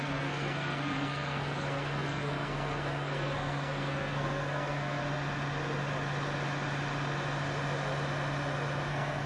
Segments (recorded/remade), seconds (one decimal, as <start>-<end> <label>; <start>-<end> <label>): 0.0-5.0 remade; 5.0-8.9 recorded; 8.9-9.3 remade